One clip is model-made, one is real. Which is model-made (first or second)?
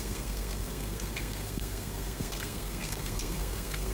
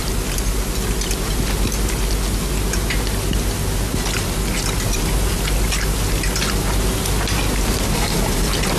first